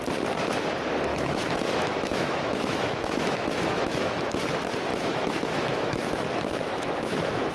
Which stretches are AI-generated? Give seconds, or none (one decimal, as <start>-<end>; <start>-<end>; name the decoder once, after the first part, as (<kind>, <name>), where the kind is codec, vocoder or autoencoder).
1.1-4.2 (autoencoder, DAC-VAE); 4.9-7.5